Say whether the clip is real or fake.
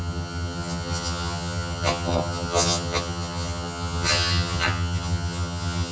fake